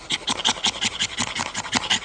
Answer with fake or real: real